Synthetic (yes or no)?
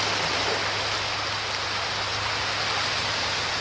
no